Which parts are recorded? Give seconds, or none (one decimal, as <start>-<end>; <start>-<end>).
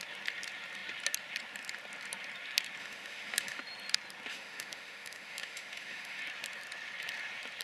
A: 0.0-2.8; 3.6-4.3; 6.2-7.6